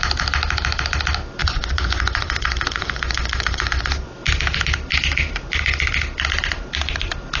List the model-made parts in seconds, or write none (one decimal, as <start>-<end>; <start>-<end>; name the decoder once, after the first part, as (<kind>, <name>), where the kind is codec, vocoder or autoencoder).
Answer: 1.4-4.1 (vocoder, Vocos)